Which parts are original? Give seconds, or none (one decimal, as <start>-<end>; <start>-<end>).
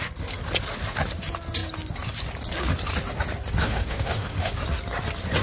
0.0-3.6; 4.5-5.4